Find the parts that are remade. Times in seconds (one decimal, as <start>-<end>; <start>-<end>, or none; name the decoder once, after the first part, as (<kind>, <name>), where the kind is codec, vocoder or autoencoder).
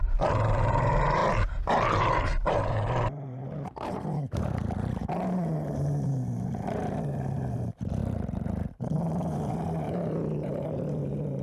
0.0-1.2 (vocoder, BigVGAN v2); 2.0-11.4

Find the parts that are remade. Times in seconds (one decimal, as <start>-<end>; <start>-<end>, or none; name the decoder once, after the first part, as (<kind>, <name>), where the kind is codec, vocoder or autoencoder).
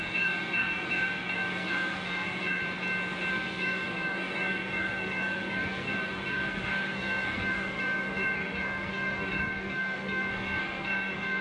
0.0-2.6 (codec, SNAC); 3.3-11.4